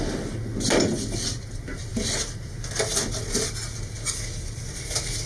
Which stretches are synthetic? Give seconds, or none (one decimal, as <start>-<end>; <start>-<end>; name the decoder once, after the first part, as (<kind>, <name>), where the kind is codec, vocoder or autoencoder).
none